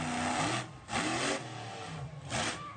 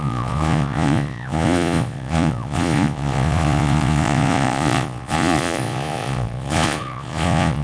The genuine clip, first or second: first